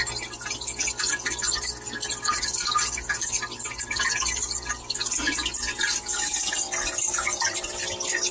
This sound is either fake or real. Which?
real